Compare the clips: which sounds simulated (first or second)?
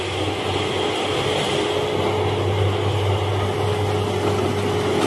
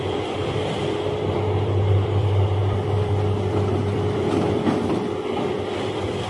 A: second